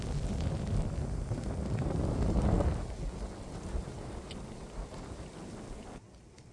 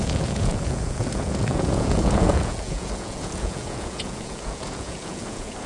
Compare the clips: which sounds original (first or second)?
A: first